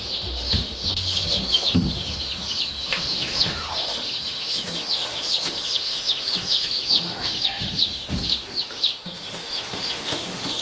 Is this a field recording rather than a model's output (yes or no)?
no